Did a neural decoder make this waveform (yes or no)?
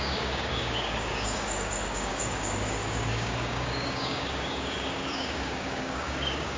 yes